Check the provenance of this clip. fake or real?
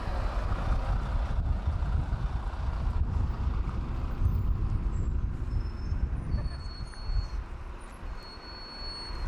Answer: real